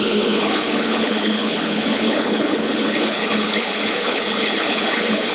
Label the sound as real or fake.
fake